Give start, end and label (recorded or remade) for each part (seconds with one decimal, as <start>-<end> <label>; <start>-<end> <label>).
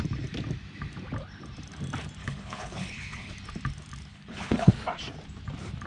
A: 0.0-2.2 recorded; 2.2-3.3 remade; 3.3-4.1 recorded; 4.1-4.7 remade; 4.7-5.9 recorded